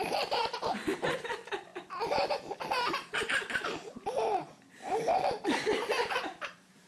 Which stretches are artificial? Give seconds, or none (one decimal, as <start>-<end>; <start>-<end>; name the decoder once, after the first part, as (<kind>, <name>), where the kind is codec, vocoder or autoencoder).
0.0-1.7 (vocoder, BigVGAN v2); 4.7-6.9